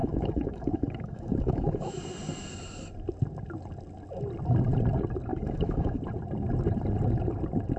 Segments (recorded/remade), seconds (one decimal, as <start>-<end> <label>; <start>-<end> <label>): 0.0-2.0 remade; 2.0-5.3 recorded; 5.3-6.0 remade; 6.0-7.8 recorded